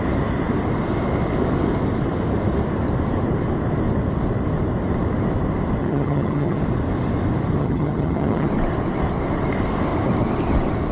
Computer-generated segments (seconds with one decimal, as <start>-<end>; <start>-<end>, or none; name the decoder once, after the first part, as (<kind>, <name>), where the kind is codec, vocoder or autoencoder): 5.8-6.6 (vocoder, HiFi-GAN); 7.6-8.5